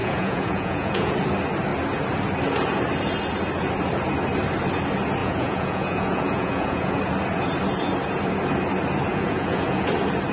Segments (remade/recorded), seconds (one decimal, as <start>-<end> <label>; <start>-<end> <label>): 0.0-1.1 remade; 1.1-5.2 recorded; 5.2-7.0 remade; 7.0-9.1 recorded; 9.1-9.9 remade; 9.9-10.3 recorded